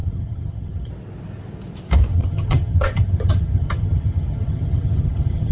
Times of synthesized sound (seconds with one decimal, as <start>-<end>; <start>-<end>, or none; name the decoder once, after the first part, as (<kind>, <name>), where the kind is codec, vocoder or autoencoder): 0.0-0.9 (vocoder, HiFi-GAN); 2.1-5.5